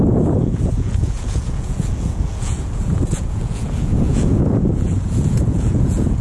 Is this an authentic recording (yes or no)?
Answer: no